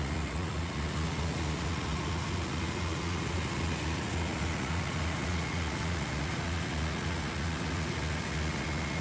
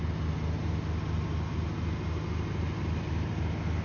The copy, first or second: first